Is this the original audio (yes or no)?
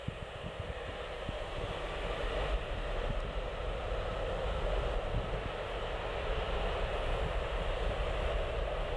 yes